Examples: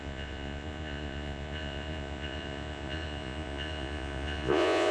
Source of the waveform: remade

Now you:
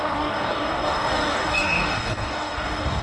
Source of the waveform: remade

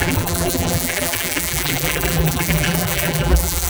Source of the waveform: remade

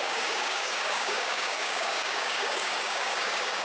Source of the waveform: remade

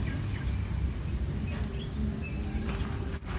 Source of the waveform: recorded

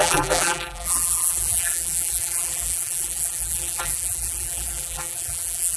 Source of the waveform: remade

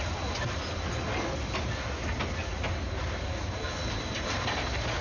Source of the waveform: recorded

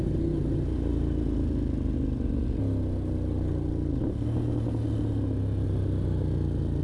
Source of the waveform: recorded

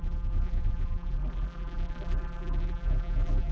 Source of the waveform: remade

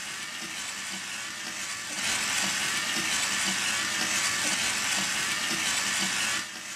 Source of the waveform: recorded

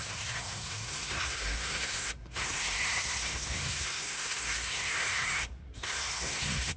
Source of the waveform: remade